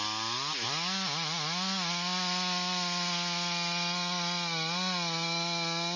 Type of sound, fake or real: real